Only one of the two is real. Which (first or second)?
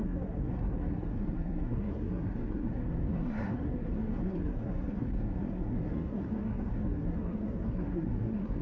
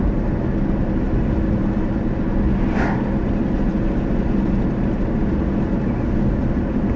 second